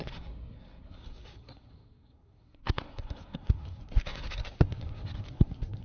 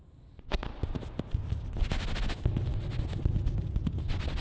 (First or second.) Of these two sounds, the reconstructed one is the first